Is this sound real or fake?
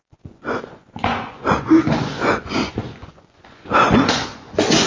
fake